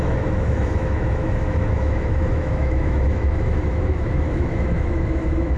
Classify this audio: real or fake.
fake